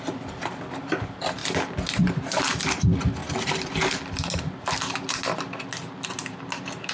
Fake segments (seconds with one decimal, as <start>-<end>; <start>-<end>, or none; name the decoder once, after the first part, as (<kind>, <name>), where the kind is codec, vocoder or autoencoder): none